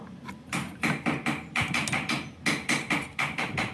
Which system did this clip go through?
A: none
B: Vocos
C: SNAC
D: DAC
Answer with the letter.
A